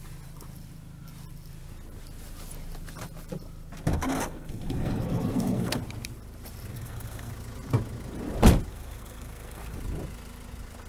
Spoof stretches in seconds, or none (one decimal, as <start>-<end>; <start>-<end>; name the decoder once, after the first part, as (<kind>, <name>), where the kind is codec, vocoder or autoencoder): 3.9-5.8 (codec, SNAC); 6.7-7.3; 8.7-9.8